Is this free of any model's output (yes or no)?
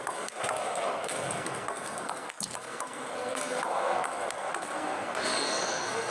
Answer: no